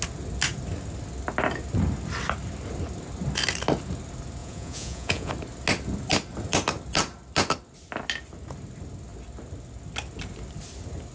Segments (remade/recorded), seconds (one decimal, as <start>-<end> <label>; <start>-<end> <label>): 0.0-4.4 recorded; 4.4-5.3 remade; 5.3-11.1 recorded